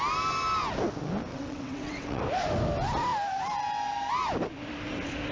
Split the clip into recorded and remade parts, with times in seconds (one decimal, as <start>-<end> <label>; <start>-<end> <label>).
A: 0.0-1.3 recorded; 1.3-2.2 remade; 2.2-5.3 recorded